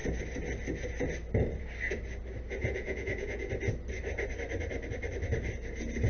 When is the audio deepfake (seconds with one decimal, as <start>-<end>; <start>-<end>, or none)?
2.6-3.5

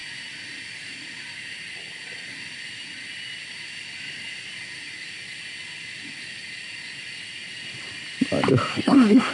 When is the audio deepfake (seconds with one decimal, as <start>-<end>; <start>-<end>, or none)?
8.7-9.3

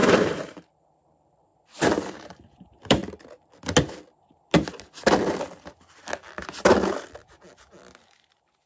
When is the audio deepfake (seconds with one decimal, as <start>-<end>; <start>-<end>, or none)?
0.0-1.5; 2.1-3.0; 8.1-8.7

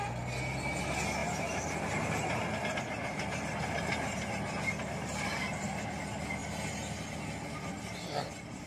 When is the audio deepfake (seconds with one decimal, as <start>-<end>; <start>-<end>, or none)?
1.2-2.4

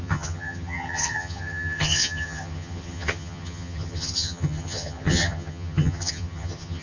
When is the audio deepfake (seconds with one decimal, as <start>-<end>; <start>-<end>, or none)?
0.0-6.8